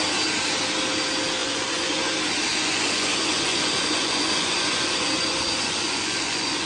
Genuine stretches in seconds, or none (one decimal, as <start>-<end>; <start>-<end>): 0.0-1.4; 2.1-2.5